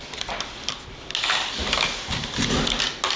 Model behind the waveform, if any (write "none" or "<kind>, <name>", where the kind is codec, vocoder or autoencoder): none